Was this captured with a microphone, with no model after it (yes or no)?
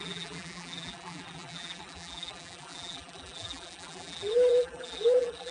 no